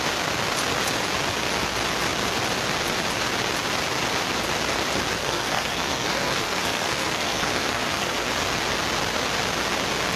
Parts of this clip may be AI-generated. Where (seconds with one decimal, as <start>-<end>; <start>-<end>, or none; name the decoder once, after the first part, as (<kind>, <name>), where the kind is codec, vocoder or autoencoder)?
5.2-8.3 (codec, SNAC)